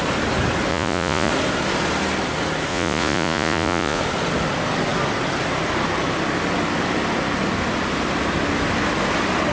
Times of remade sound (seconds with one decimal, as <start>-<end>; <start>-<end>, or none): 0.7-1.3; 2.7-4.0